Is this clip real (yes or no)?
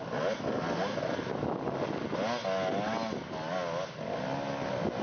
yes